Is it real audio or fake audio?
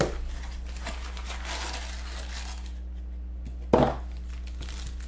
real